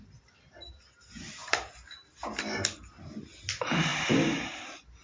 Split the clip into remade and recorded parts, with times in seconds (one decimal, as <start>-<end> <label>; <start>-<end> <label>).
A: 0.0-5.0 recorded